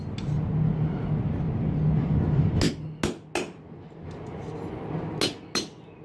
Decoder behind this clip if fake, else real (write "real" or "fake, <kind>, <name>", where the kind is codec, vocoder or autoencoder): real